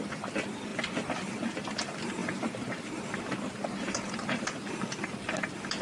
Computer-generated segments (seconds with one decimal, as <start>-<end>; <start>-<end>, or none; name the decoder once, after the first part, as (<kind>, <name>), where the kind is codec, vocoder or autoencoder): 2.2-5.8 (vocoder, BigVGAN v2)